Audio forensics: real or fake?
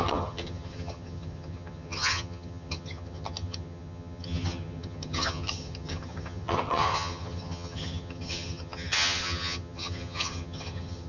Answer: fake